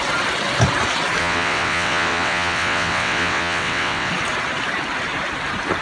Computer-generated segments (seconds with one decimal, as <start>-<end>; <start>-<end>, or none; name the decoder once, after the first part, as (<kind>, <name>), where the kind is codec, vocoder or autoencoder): 1.2-4.1 (vocoder, WaveNeXt)